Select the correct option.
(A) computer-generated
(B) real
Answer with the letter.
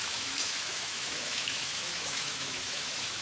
A